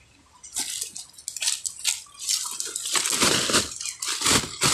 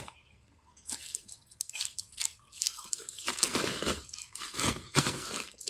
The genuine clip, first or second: first